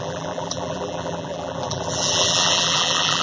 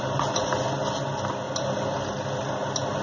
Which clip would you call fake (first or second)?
first